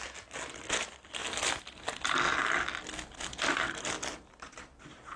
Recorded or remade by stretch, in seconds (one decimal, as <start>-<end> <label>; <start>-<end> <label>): 0.0-5.2 recorded